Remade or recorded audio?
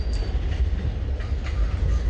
recorded